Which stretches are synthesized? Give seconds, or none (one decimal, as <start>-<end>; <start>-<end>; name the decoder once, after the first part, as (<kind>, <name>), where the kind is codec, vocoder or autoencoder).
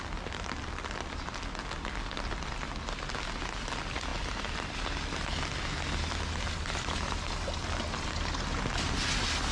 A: none